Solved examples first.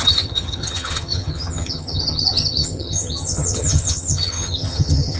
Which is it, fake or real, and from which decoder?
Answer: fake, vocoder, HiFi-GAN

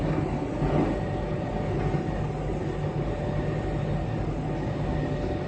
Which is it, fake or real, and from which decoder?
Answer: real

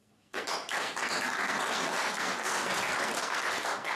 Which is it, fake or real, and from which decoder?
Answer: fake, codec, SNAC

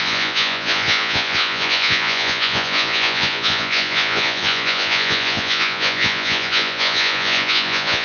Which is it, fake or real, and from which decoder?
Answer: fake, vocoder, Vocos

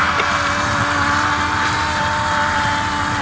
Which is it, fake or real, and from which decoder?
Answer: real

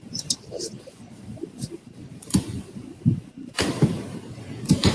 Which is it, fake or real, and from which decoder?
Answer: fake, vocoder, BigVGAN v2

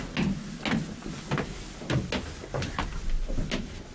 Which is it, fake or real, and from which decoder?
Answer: real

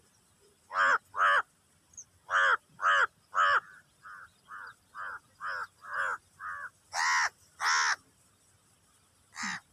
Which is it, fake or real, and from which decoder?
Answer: real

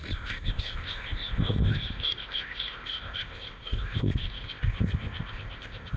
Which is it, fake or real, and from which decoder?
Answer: fake, codec, ZipCodec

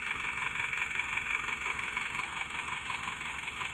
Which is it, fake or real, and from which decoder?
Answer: fake, autoencoder, DAC-VAE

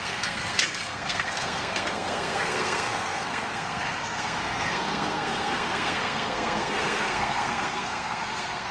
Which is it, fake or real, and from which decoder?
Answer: fake, codec, SNAC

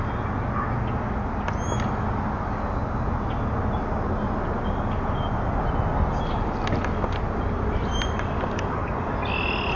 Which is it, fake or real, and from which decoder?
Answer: real